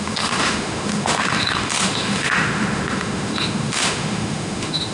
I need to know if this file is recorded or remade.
remade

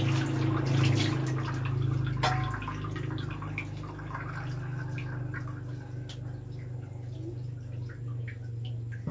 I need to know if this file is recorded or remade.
recorded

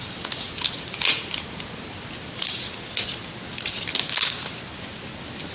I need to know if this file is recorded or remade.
recorded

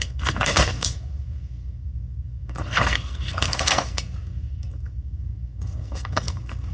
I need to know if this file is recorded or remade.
remade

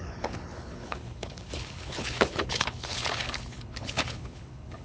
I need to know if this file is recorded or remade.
remade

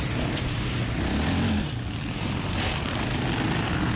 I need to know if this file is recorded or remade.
remade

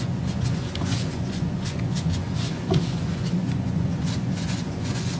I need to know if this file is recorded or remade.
remade